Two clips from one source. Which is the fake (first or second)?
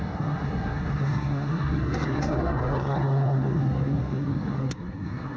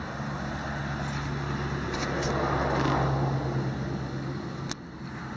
first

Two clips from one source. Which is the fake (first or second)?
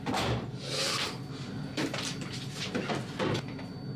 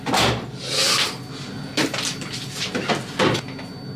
first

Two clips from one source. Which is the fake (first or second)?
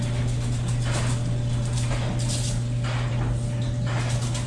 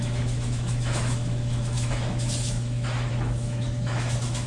second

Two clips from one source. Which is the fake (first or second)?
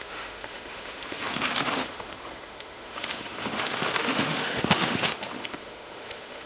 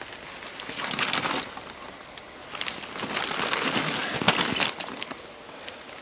first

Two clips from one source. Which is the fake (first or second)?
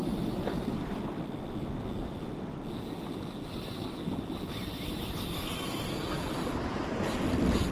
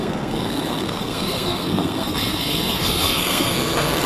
second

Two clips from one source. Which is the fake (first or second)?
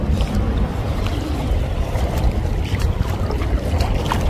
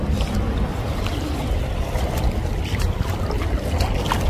first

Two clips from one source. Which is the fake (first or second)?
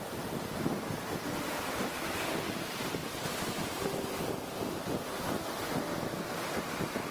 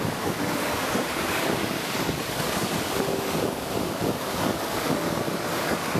second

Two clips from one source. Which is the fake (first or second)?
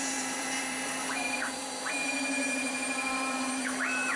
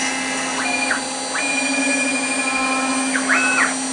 first